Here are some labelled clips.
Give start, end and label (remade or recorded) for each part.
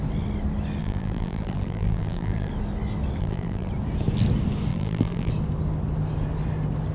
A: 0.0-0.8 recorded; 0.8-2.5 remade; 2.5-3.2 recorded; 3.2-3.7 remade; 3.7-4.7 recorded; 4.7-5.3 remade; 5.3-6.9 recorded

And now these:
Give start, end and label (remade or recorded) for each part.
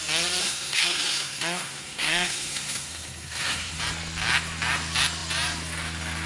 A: 0.0-0.4 recorded; 0.4-3.8 remade; 3.8-6.3 recorded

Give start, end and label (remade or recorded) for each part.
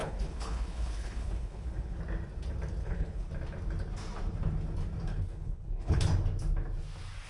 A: 0.0-2.0 remade; 2.0-2.8 recorded; 2.8-3.3 remade; 3.3-5.1 recorded; 5.1-6.0 remade; 6.0-7.3 recorded